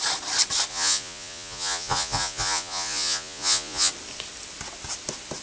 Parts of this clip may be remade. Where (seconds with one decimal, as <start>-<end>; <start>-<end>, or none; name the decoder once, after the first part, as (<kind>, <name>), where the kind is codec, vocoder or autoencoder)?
0.7-3.9 (vocoder, Vocos)